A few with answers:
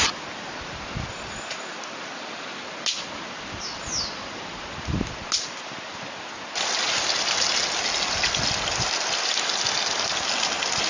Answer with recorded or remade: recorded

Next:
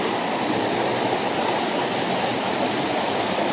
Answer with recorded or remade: recorded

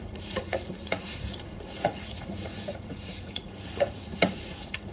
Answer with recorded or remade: remade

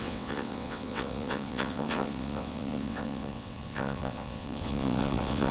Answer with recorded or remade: remade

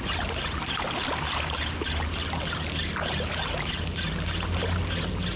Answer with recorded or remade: recorded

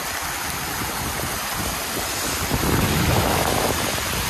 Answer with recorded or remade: recorded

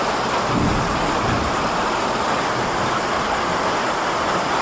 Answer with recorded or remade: recorded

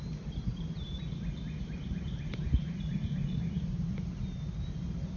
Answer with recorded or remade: recorded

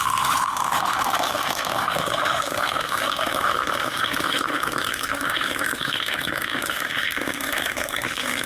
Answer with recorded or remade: remade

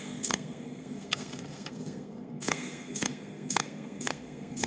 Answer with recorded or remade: remade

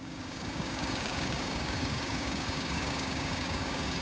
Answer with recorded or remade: remade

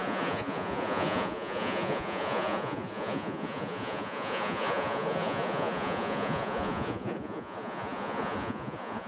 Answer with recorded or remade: remade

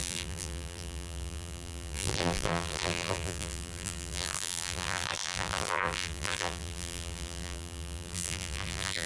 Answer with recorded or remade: remade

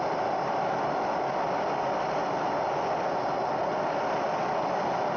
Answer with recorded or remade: recorded